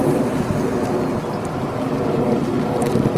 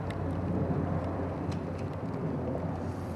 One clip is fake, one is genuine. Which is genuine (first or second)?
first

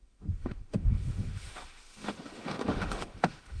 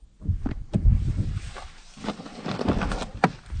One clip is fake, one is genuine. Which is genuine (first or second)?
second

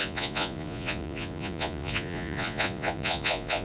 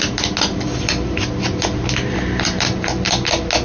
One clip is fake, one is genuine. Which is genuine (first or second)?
second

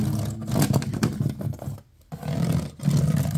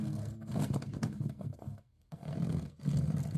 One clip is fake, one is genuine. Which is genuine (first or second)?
first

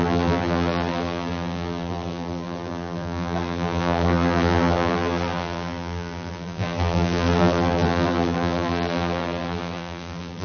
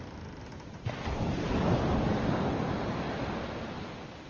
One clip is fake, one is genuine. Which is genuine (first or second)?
second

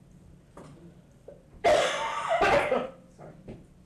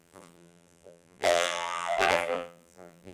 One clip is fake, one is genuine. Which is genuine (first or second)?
first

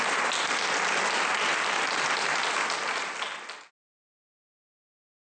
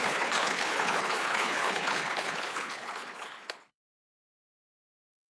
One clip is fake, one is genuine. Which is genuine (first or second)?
first